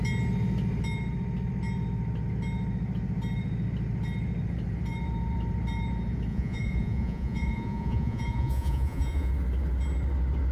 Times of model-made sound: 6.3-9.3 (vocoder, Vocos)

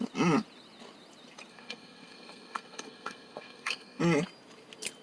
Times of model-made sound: 1.5-4.0 (codec, SNAC)

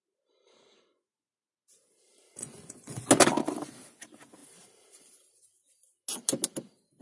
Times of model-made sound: 2.4-3.1 (vocoder, Vocos)

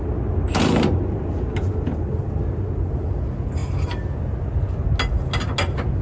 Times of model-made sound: none